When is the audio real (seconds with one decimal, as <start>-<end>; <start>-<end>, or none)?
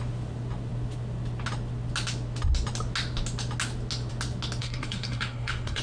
0.0-4.6